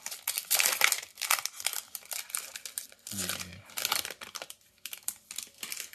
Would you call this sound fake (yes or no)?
no